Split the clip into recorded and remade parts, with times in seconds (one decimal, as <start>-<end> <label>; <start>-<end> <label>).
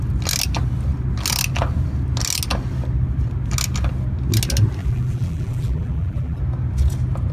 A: 0.0-4.8 recorded; 4.8-6.4 remade; 6.4-7.3 recorded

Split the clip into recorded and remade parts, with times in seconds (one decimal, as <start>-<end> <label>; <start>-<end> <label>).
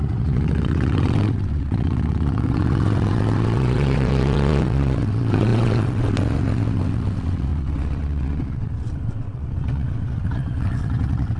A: 0.0-11.4 remade